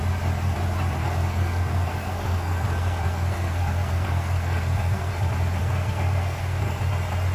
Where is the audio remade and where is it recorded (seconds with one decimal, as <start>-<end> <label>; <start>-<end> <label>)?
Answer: 0.0-1.0 recorded; 1.0-5.1 remade; 5.1-5.6 recorded; 5.6-6.8 remade; 6.8-7.3 recorded